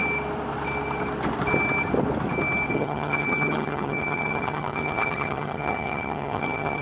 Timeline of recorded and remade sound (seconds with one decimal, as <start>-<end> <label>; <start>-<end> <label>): 0.0-2.7 recorded; 2.7-6.8 remade